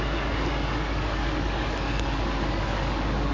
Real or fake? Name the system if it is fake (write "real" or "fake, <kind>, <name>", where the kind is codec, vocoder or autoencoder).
fake, codec, DAC